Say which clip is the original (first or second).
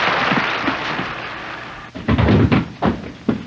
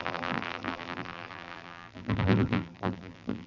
first